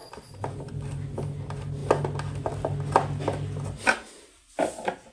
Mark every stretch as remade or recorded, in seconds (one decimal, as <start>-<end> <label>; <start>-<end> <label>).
0.0-5.1 recorded

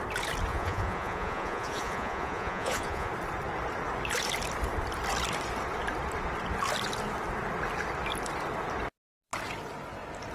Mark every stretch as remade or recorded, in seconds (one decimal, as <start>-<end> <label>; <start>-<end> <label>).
0.0-0.5 recorded; 0.5-3.1 remade; 3.1-10.3 recorded